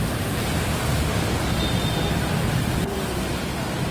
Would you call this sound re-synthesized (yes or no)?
yes